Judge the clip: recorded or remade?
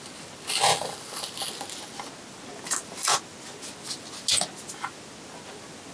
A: recorded